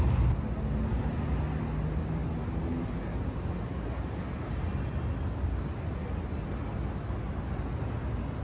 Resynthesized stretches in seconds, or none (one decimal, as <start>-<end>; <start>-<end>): none